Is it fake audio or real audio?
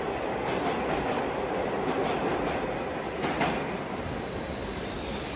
real